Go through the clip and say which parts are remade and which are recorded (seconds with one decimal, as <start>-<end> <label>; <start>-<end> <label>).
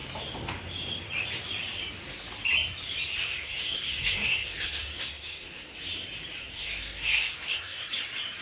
0.0-3.2 recorded; 3.2-5.7 remade; 5.7-6.4 recorded; 6.4-7.8 remade; 7.8-8.4 recorded